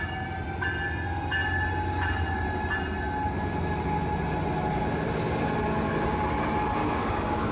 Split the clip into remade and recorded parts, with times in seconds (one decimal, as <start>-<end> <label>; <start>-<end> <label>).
0.0-6.8 recorded; 6.8-7.5 remade

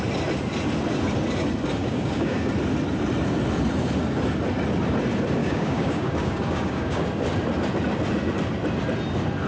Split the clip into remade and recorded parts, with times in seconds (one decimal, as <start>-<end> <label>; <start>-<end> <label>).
0.0-1.8 recorded; 1.8-2.5 remade; 2.5-5.4 recorded; 5.4-7.0 remade; 7.0-9.5 recorded

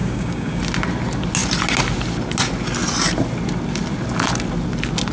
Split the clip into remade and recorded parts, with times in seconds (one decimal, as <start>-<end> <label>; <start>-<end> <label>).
0.0-0.6 remade; 0.6-5.1 recorded

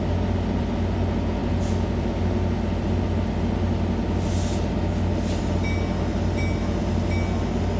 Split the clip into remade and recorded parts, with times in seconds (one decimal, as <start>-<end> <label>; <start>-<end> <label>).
0.0-7.8 recorded

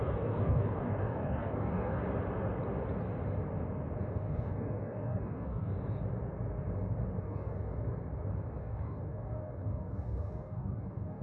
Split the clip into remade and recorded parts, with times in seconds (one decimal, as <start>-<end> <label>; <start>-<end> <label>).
0.0-2.0 remade; 2.0-4.1 recorded; 4.1-5.7 remade; 5.7-7.2 recorded; 7.2-7.9 remade; 7.9-8.6 recorded; 8.6-11.2 remade